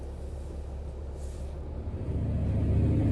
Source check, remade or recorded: recorded